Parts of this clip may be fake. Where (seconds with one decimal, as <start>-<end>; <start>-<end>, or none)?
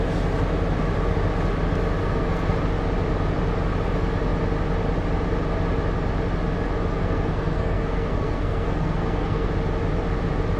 2.0-2.6; 6.9-9.5